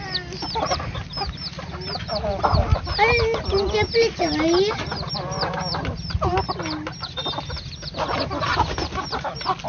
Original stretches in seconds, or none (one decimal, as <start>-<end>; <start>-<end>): 0.0-9.7